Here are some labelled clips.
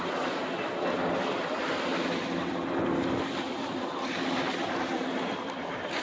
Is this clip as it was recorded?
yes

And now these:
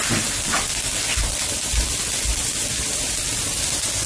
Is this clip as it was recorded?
yes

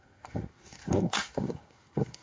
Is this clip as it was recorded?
no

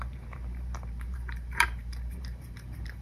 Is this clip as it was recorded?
no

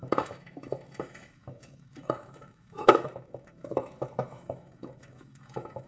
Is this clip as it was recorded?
no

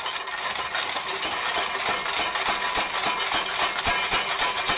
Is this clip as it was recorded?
yes